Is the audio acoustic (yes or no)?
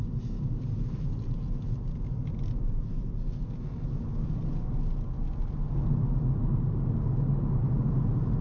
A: yes